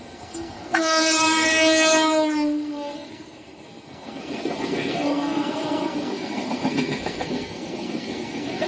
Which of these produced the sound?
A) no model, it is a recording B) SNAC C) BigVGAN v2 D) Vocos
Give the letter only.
B